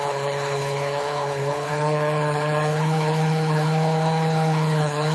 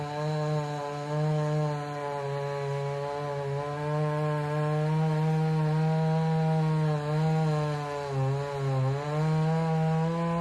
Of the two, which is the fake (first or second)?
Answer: first